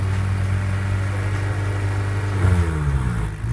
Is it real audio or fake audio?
real